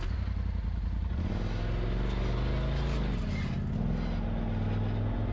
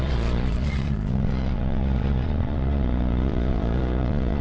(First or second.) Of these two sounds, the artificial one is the second